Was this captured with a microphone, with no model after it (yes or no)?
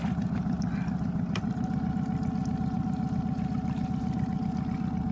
yes